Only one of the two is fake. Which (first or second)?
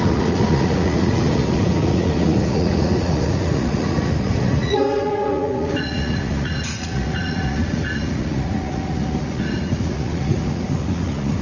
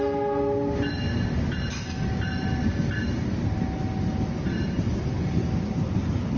first